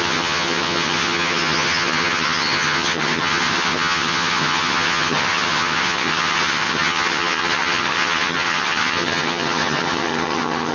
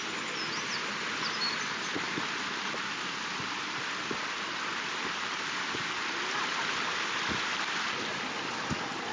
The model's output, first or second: first